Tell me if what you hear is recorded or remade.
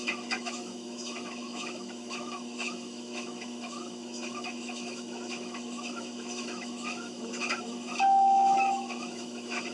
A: remade